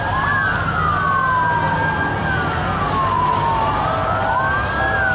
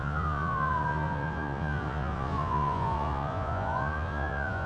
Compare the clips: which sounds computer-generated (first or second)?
second